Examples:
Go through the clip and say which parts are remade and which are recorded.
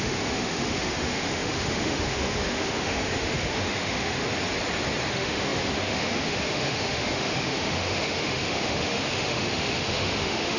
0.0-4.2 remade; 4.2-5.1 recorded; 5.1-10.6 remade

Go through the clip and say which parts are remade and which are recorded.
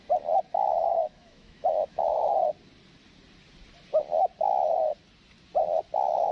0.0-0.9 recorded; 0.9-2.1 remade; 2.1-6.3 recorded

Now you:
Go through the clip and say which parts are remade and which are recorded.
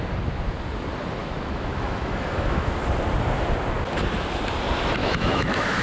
0.0-1.2 recorded; 1.2-2.8 remade; 2.8-5.0 recorded; 5.0-5.8 remade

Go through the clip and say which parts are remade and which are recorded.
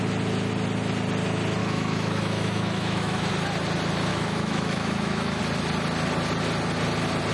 0.0-1.6 recorded; 1.6-3.3 remade; 3.3-4.1 recorded; 4.1-5.4 remade; 5.4-7.3 recorded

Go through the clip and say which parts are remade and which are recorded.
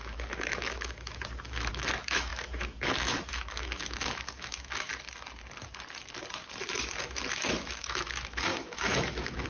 0.0-4.9 remade; 4.9-7.0 recorded; 7.0-9.5 remade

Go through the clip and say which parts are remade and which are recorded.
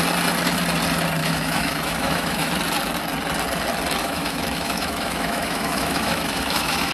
0.0-1.2 recorded; 1.2-2.5 remade; 2.5-4.0 recorded; 4.0-6.9 remade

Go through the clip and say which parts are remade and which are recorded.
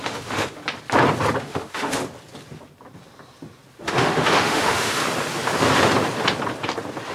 0.0-0.6 remade; 0.6-1.4 recorded; 1.4-2.0 remade; 2.0-3.8 recorded; 3.8-5.0 remade; 5.0-7.1 recorded